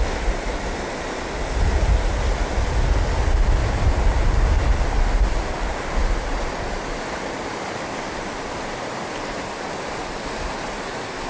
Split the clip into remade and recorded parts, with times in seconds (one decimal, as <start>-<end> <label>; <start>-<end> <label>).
0.0-3.6 recorded; 3.6-4.4 remade; 4.4-6.0 recorded; 6.0-10.8 remade; 10.8-11.3 recorded